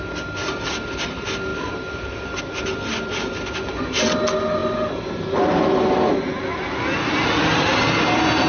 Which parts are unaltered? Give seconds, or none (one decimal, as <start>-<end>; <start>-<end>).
0.0-8.5